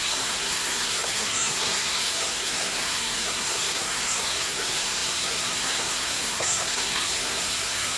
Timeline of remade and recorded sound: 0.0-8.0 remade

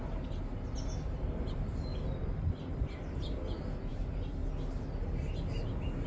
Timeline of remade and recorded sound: 0.0-1.9 recorded; 1.9-2.7 remade; 2.7-6.1 recorded

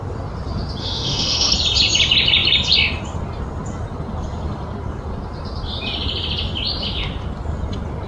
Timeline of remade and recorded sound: 0.0-0.8 recorded; 0.8-1.5 remade; 1.5-8.1 recorded